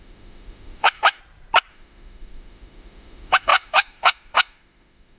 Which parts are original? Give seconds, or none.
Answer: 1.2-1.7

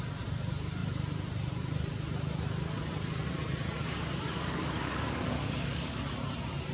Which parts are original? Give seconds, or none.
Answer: 0.0-3.8; 6.0-6.7

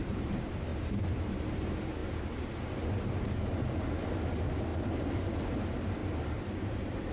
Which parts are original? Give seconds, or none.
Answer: 2.0-4.1; 6.0-6.6

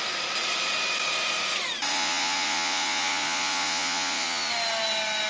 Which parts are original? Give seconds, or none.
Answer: 0.0-1.9; 4.5-5.3